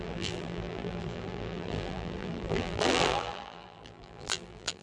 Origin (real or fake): fake